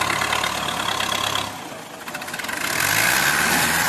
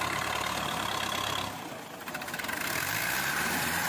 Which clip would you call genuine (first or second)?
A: first